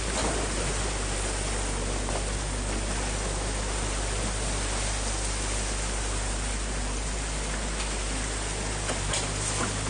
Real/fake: real